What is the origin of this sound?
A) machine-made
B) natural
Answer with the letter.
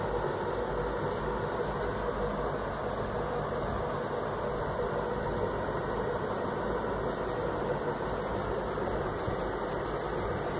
B